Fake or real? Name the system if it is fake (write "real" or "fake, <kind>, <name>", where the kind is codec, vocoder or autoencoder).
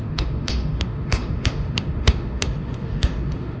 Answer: fake, autoencoder, DAC-VAE